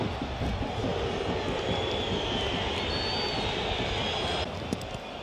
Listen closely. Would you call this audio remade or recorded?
recorded